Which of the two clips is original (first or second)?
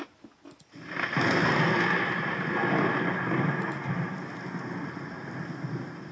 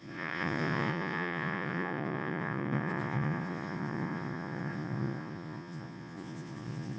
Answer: first